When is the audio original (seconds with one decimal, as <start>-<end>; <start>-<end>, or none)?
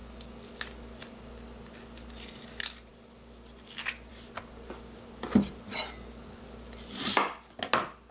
0.0-8.1